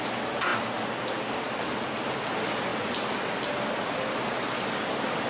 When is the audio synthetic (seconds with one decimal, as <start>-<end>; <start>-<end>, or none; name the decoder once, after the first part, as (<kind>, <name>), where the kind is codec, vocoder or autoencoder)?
none